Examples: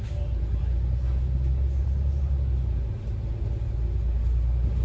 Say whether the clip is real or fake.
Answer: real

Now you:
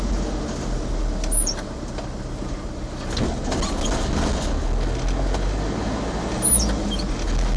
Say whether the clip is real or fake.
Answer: real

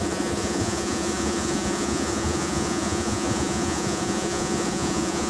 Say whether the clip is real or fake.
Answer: fake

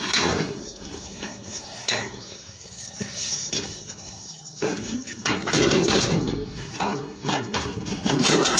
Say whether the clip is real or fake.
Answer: fake